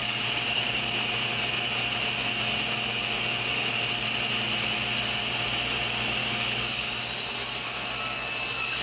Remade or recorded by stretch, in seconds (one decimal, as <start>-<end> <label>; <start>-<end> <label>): 0.0-0.8 remade; 0.8-6.2 recorded; 6.2-7.0 remade; 7.0-8.8 recorded